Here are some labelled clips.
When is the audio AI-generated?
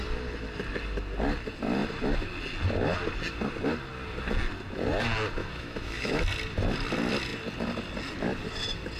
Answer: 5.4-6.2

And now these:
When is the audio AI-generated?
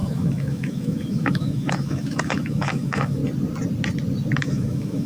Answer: 0.0-3.2; 4.4-5.1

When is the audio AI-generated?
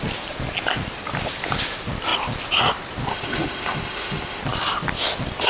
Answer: 3.1-4.4